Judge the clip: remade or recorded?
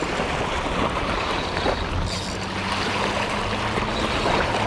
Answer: recorded